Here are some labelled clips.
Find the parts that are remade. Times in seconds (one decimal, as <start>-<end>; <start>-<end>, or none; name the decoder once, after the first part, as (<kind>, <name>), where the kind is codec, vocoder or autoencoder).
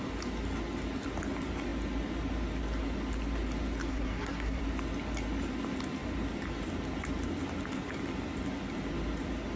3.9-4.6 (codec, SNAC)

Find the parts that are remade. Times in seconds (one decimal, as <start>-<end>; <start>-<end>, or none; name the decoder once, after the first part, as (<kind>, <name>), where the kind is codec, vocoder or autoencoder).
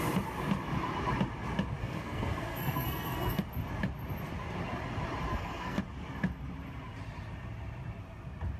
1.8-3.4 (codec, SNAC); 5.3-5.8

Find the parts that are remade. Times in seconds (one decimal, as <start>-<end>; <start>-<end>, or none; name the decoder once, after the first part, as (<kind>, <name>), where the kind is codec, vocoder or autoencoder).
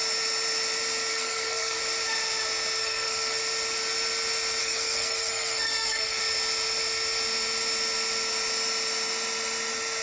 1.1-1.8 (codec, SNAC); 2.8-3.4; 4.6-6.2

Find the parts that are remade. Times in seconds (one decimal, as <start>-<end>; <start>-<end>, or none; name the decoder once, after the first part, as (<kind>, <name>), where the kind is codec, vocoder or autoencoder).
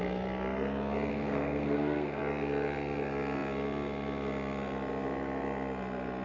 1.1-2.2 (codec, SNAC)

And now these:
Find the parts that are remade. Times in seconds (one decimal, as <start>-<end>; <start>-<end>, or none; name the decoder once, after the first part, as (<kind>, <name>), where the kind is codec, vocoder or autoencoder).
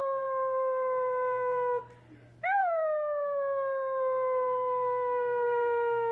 0.0-1.8 (codec, SNAC); 2.6-6.1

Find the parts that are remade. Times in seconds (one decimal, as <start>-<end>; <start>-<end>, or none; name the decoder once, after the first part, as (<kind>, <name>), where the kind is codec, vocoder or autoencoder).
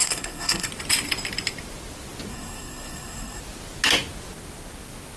0.0-0.7 (codec, SNAC); 2.3-3.4